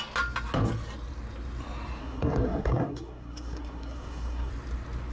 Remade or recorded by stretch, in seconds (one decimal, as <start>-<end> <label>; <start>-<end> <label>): 0.0-2.0 recorded; 2.0-4.5 remade; 4.5-5.1 recorded